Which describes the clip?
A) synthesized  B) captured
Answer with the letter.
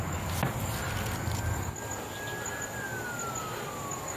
B